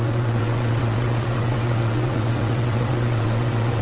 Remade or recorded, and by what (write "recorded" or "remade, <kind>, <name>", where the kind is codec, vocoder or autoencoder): remade, vocoder, WaveNeXt